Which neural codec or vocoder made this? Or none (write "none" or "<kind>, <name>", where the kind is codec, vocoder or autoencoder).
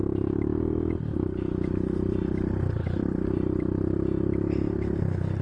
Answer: vocoder, BigVGAN v2